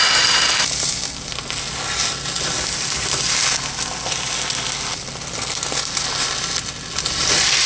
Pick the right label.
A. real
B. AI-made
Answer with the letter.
A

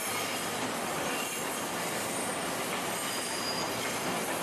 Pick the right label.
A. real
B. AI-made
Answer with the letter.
A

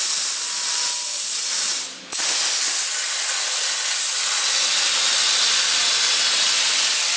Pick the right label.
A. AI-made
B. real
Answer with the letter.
B